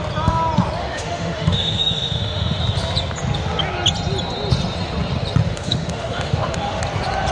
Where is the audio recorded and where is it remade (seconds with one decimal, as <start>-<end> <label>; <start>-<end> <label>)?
0.0-0.8 recorded; 0.8-2.6 remade; 2.6-5.5 recorded; 5.5-6.8 remade; 6.8-7.3 recorded